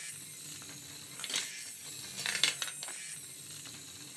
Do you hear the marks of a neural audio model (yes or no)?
no